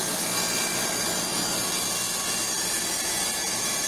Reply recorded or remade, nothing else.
recorded